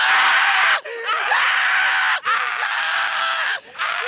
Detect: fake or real real